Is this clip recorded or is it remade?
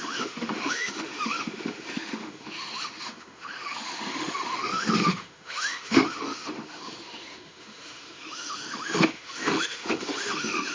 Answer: remade